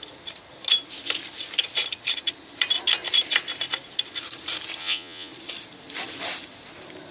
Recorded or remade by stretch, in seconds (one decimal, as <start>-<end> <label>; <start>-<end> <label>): 0.0-4.8 recorded; 4.8-5.3 remade; 5.3-7.1 recorded